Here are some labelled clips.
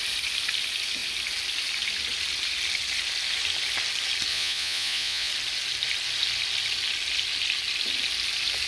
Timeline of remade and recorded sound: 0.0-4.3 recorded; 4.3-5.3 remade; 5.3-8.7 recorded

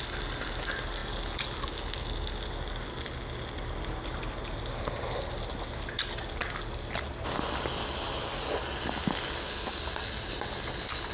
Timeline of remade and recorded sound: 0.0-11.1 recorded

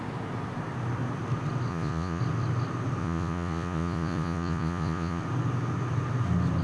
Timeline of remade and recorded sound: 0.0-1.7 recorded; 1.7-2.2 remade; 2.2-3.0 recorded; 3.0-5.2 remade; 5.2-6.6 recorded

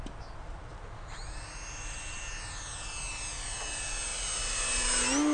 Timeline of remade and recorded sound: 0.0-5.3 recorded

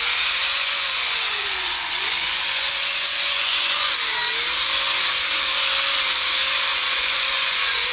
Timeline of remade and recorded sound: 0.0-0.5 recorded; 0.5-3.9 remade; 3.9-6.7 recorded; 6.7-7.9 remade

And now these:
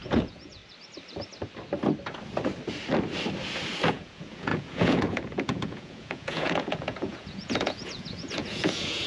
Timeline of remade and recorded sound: 0.0-0.6 remade; 0.6-3.9 recorded; 3.9-9.1 remade

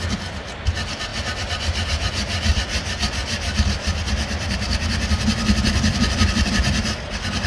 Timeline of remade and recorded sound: 0.0-7.5 recorded